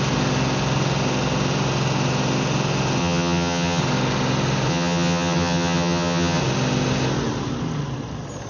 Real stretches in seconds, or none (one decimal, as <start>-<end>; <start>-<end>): 0.0-3.0; 3.8-4.7; 6.4-8.5